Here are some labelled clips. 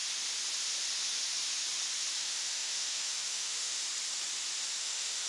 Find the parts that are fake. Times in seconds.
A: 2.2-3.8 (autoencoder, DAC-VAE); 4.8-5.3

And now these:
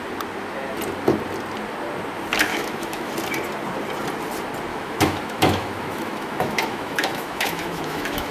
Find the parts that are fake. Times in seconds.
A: 2.5-3.1 (autoencoder, DAC-VAE); 4.7-8.3

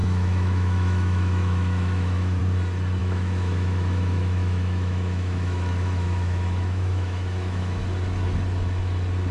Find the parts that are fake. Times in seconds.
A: 0.0-2.4 (autoencoder, DAC-VAE); 3.0-7.8

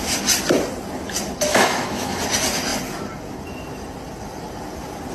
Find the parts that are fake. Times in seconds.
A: 1.5-2.2 (autoencoder, DAC-VAE)

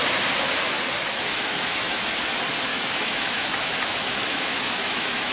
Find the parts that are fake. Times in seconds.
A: 1.3-2.2 (autoencoder, DAC-VAE); 2.7-5.3

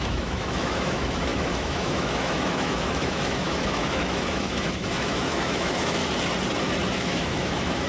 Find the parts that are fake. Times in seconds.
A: 0.0-6.0 (autoencoder, DAC-VAE); 6.9-7.9

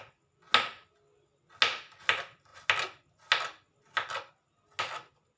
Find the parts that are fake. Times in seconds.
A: none

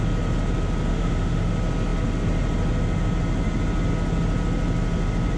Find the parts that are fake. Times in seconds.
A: 0.9-1.5 (autoencoder, DAC-VAE)